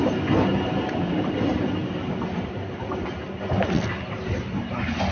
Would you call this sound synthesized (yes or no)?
no